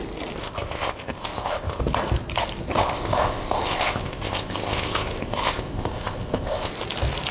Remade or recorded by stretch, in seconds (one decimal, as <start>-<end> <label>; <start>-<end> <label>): 0.0-0.4 recorded; 0.4-1.8 remade; 1.8-2.7 recorded; 2.7-6.7 remade; 6.7-7.3 recorded